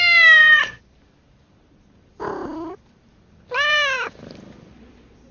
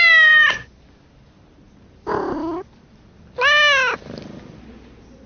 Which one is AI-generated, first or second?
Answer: first